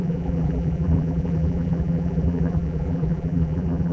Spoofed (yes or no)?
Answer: yes